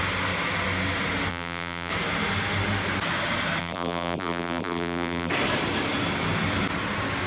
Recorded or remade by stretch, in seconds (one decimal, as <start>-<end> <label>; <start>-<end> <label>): 0.0-1.3 recorded; 1.3-1.9 remade; 1.9-3.6 recorded; 3.6-5.3 remade; 5.3-7.3 recorded